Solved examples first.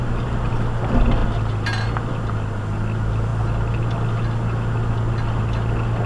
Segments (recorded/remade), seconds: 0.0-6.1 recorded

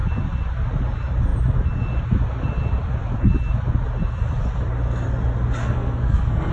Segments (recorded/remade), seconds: 0.0-5.6 recorded; 5.6-6.5 remade

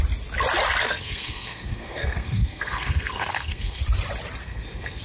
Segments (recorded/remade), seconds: 0.0-0.8 recorded; 0.8-3.8 remade; 3.8-4.4 recorded; 4.4-5.0 remade

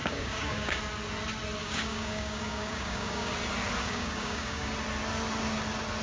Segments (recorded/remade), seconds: 0.0-0.8 remade; 0.8-1.6 recorded; 1.6-3.3 remade; 3.3-3.8 recorded; 3.8-4.7 remade; 4.7-6.0 recorded

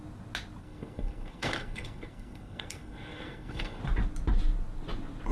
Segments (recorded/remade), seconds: 0.0-0.6 recorded; 0.6-3.8 remade; 3.8-5.3 recorded

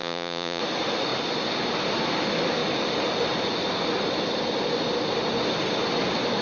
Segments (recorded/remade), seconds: 0.0-0.6 remade; 0.6-6.4 recorded

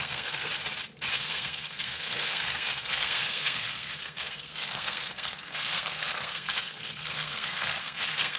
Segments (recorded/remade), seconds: 0.0-0.5 remade; 0.5-1.1 recorded; 1.1-8.4 remade